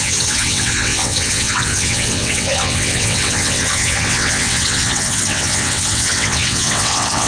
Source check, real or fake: fake